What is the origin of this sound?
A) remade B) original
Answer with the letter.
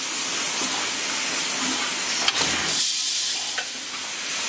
B